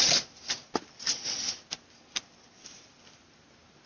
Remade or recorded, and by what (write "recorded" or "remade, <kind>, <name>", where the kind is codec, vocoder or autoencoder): recorded